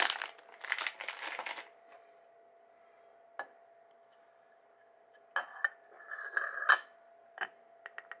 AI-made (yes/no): no